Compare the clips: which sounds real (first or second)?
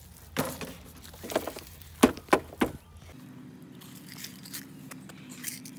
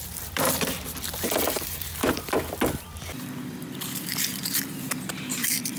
first